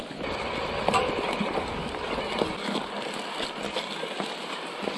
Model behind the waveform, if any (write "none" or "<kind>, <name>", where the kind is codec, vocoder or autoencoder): none